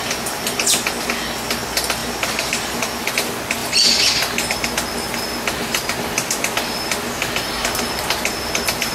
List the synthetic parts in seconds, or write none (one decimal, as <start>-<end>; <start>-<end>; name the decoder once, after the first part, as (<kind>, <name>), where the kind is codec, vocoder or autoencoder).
2.0-3.1 (vocoder, BigVGAN v2)